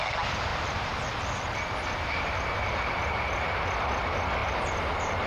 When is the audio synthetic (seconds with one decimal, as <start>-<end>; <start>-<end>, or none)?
0.5-1.1; 4.4-5.3